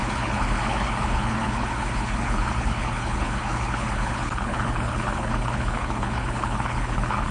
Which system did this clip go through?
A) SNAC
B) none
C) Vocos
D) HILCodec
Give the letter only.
D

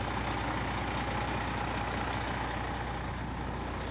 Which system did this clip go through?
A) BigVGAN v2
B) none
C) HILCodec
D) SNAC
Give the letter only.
B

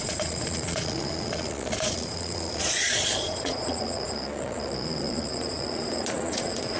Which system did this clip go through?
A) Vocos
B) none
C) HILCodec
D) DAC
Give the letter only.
A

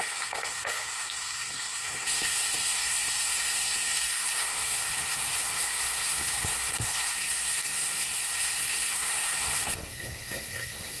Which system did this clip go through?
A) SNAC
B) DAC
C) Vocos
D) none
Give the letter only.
A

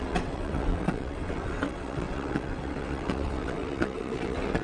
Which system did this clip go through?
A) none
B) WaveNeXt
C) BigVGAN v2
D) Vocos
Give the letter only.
B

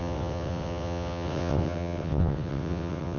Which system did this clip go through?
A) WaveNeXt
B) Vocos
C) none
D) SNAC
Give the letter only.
A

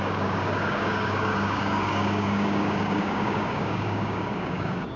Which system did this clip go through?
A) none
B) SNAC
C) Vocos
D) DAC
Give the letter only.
D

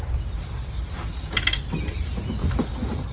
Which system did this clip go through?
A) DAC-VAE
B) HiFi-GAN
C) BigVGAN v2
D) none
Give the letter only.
D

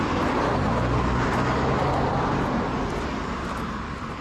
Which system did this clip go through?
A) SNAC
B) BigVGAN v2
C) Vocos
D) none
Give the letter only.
D